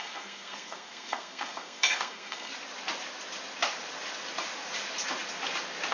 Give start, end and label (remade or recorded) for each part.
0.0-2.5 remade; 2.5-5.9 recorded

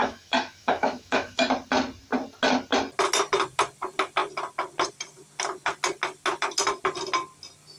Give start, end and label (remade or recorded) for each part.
0.0-1.4 remade; 1.4-7.8 recorded

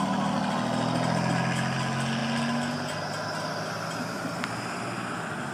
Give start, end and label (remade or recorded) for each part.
0.0-5.5 recorded

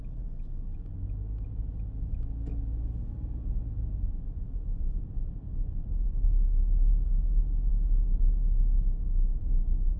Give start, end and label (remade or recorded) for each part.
0.0-10.0 recorded

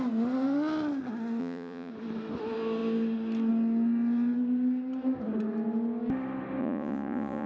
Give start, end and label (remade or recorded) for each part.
0.0-1.4 recorded; 1.4-1.9 remade; 1.9-6.6 recorded; 6.6-7.5 remade

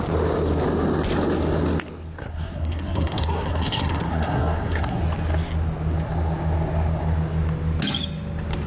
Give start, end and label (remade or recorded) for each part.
0.0-2.2 recorded; 2.2-5.0 remade; 5.0-8.7 recorded